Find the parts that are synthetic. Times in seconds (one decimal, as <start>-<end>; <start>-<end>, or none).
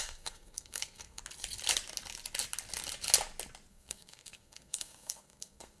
0.0-1.2; 3.7-5.8